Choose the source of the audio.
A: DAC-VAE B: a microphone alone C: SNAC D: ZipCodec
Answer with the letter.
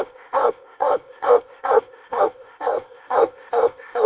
D